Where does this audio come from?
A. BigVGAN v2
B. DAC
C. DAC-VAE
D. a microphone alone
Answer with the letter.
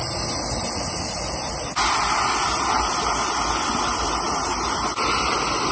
D